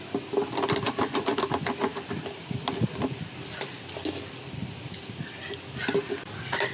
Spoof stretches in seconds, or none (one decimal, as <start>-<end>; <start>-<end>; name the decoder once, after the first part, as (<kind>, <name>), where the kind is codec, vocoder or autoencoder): none